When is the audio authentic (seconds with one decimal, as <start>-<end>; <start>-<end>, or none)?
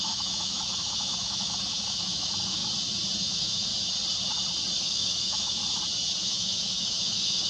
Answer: 2.6-3.2; 3.7-4.8; 5.6-6.2